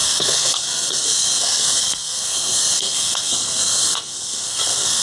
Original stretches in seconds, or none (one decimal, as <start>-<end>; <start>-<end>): none